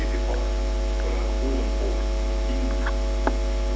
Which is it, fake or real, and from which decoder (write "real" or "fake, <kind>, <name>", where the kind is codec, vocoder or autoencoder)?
real